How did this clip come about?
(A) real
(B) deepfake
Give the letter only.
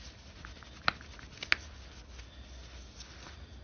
A